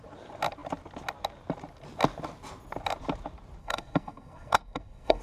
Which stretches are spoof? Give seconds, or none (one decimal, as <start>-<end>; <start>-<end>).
3.6-5.2